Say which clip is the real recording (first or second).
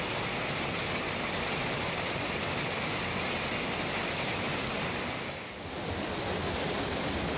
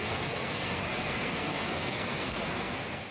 first